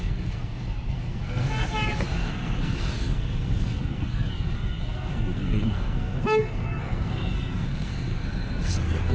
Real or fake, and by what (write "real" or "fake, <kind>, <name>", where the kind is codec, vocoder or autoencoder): fake, codec, SNAC